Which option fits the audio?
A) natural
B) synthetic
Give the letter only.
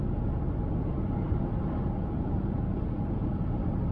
B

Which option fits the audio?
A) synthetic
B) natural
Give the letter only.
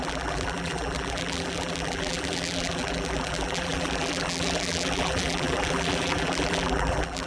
A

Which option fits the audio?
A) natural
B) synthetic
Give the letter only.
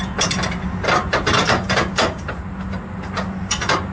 A